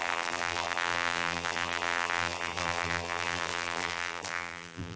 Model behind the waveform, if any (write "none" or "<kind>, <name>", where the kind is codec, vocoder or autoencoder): vocoder, BigVGAN v2